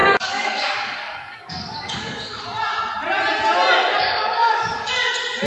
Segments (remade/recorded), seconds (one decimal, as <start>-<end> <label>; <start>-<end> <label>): 0.0-2.4 remade; 2.4-3.9 recorded; 3.9-4.9 remade; 4.9-5.5 recorded